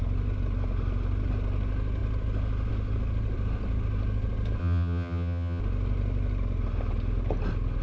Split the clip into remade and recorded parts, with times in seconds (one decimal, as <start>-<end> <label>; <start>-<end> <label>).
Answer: 0.0-4.6 recorded; 4.6-5.6 remade; 5.6-7.8 recorded